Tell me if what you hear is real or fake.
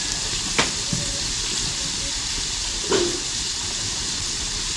fake